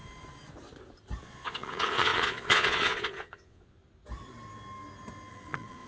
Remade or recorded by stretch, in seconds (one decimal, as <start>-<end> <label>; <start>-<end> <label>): 0.0-1.2 recorded; 1.2-3.8 remade; 3.8-5.3 recorded; 5.3-5.9 remade